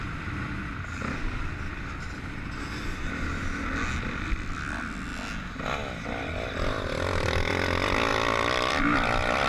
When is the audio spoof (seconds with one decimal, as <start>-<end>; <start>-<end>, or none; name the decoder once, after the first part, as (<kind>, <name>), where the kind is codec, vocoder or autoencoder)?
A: none